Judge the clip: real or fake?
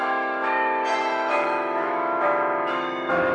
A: fake